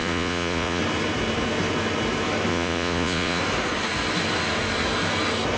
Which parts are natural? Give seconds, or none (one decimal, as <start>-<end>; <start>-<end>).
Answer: 0.8-2.5; 3.4-5.6